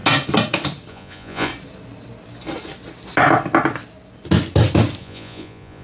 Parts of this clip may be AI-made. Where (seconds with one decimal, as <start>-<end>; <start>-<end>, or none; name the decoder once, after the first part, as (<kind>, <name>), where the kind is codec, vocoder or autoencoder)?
0.9-1.5 (vocoder, Vocos); 5.0-5.8